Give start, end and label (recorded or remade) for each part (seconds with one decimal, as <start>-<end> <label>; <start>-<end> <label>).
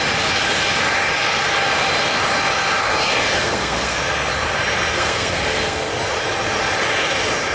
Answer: 0.0-3.4 recorded; 3.4-4.3 remade; 4.3-4.9 recorded; 4.9-5.9 remade; 5.9-7.5 recorded